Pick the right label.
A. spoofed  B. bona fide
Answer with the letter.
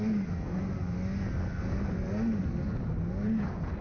B